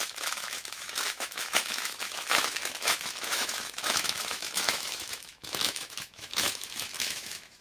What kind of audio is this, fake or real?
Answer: fake